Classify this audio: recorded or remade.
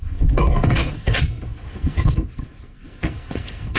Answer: remade